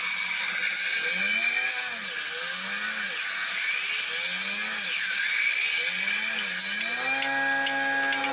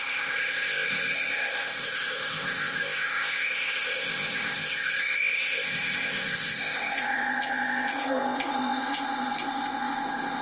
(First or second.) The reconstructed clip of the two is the second